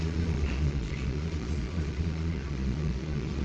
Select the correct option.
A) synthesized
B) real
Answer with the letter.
A